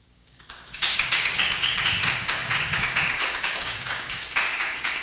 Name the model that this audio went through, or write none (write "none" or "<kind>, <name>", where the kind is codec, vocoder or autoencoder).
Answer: codec, DAC